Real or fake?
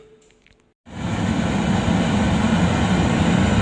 real